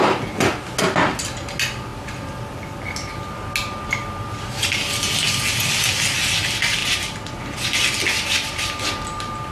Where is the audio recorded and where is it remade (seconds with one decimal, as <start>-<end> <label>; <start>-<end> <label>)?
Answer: 0.0-9.5 recorded